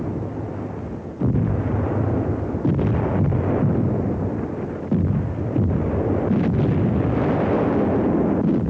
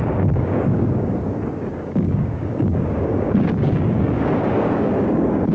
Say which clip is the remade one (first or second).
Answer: second